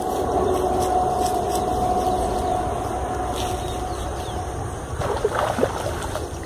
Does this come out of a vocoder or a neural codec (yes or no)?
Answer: no